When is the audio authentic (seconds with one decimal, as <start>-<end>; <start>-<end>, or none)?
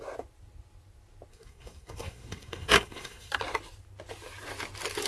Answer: 0.0-1.3; 3.3-5.1